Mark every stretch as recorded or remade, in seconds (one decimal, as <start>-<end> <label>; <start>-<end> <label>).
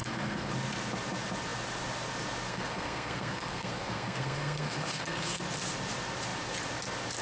0.0-0.5 remade; 0.5-2.5 recorded; 2.5-5.4 remade; 5.4-7.2 recorded